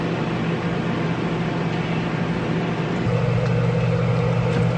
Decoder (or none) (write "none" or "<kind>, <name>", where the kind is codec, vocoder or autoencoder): none